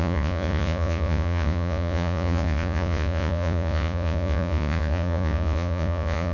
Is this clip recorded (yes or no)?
no